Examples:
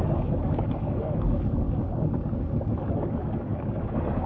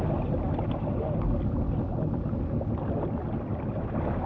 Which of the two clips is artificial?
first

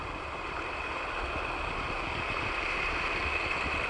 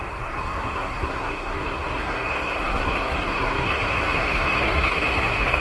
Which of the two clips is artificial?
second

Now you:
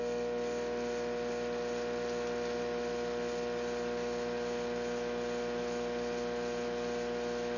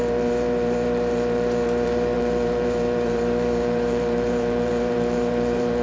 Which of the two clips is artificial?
second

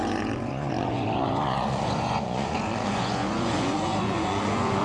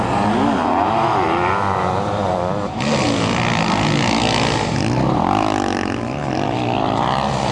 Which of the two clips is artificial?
first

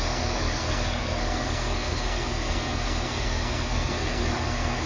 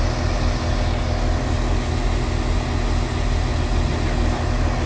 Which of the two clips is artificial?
first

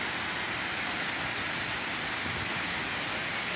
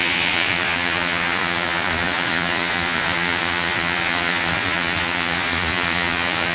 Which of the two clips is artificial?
second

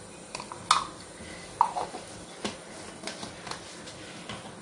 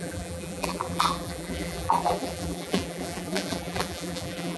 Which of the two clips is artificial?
second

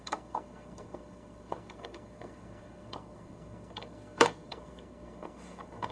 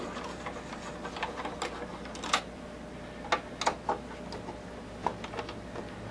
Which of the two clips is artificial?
first